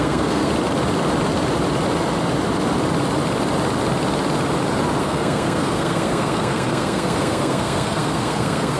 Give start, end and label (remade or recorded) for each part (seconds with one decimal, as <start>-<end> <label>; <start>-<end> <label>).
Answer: 0.0-0.5 remade; 0.5-5.0 recorded; 5.0-8.8 remade